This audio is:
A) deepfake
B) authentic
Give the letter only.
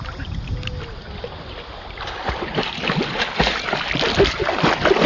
B